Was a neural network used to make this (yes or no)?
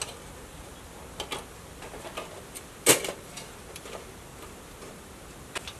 no